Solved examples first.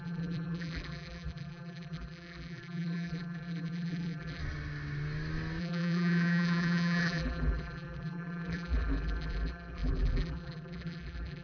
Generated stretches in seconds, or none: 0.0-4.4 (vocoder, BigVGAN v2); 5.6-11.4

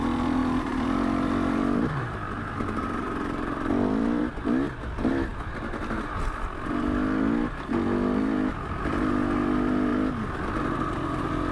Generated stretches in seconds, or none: 0.4-4.2 (vocoder, BigVGAN v2); 5.3-6.4

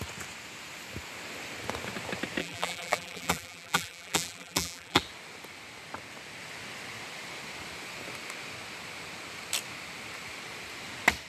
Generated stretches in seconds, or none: 2.4-5.0 (vocoder, BigVGAN v2)